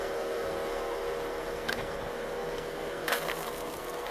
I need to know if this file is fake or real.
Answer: fake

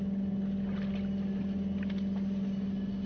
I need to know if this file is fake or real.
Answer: real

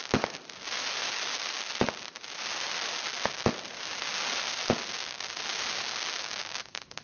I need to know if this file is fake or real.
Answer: real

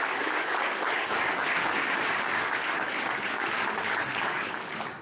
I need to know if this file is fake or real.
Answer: fake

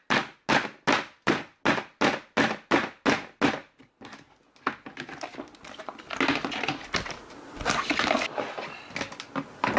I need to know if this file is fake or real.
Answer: real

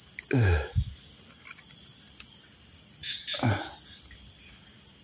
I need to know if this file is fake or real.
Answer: real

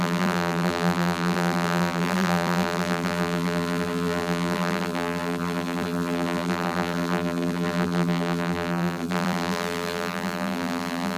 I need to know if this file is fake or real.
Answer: fake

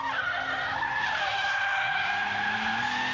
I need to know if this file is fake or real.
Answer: real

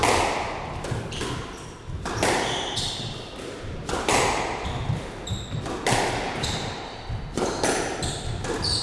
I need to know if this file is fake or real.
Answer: real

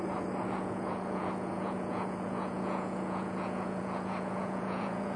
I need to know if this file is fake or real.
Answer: fake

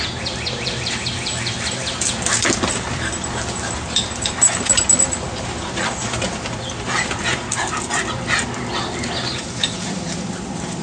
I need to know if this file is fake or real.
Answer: fake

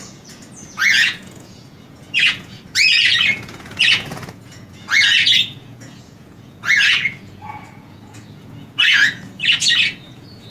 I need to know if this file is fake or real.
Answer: fake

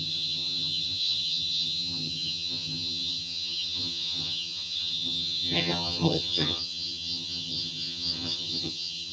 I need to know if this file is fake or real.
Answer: fake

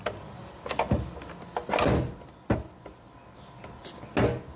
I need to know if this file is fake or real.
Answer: real